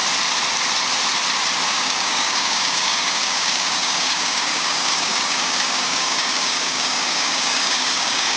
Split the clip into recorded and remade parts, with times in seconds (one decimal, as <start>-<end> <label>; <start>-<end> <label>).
0.0-1.7 recorded; 1.7-8.4 remade